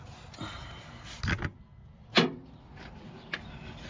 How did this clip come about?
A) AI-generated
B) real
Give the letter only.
B